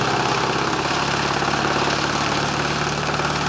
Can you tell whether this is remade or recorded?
recorded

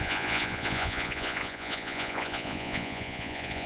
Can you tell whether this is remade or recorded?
remade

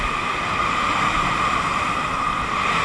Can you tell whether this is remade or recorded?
recorded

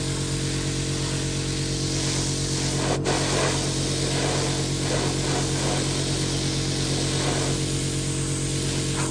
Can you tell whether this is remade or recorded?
recorded